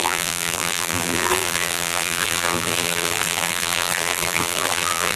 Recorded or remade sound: remade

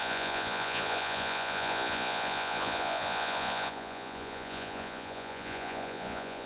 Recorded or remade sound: remade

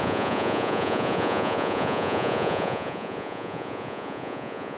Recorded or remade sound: remade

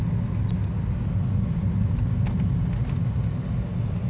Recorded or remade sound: recorded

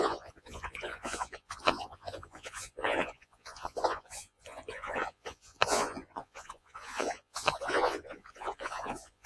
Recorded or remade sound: remade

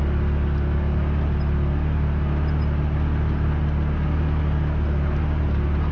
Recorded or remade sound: recorded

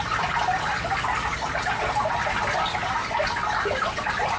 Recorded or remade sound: recorded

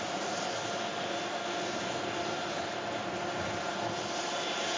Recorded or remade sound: recorded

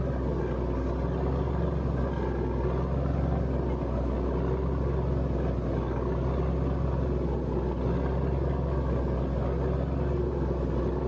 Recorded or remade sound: recorded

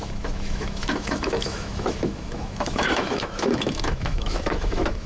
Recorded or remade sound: remade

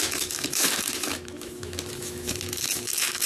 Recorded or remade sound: remade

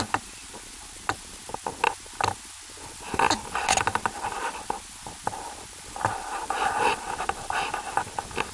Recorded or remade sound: recorded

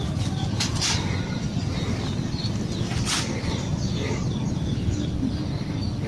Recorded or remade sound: recorded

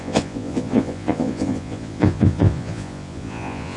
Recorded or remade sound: remade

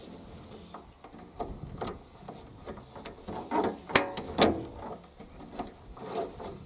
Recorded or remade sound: recorded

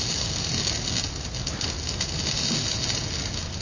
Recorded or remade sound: recorded